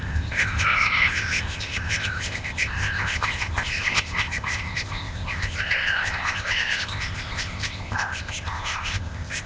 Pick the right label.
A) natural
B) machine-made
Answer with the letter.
B